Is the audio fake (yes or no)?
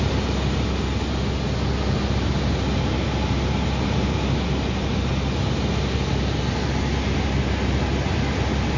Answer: no